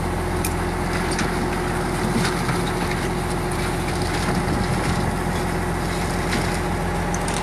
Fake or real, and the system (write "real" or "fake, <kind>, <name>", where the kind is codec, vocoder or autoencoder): real